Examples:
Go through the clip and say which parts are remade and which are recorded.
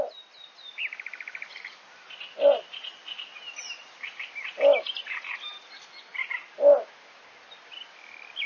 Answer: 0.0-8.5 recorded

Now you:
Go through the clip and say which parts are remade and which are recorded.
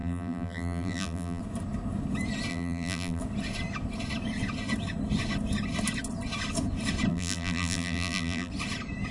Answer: 0.0-1.4 remade; 1.4-2.5 recorded; 2.5-3.2 remade; 3.2-7.1 recorded; 7.1-8.5 remade; 8.5-9.1 recorded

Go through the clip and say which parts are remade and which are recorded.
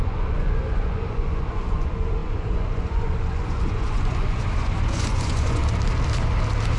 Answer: 0.0-5.6 remade; 5.6-6.8 recorded